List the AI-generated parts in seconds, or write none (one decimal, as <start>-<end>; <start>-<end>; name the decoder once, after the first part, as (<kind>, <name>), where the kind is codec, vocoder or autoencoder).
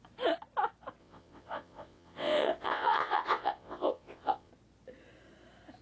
1.0-4.5 (vocoder, WaveNeXt)